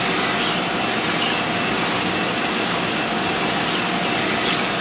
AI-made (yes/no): no